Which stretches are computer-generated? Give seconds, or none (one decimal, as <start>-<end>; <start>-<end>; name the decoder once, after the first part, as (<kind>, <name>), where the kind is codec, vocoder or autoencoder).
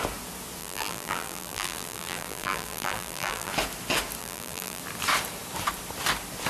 0.6-3.5 (vocoder, BigVGAN v2); 4.2-4.8